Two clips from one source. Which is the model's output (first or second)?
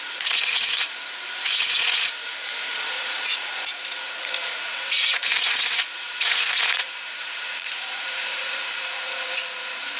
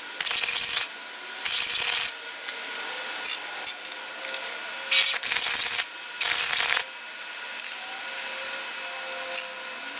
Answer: first